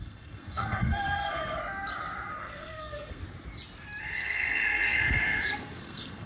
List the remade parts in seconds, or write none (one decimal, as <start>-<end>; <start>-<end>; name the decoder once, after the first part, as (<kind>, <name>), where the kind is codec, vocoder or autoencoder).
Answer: 0.0-1.6 (codec, SNAC); 2.3-3.2; 4.1-6.3